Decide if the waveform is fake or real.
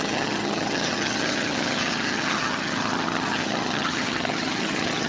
fake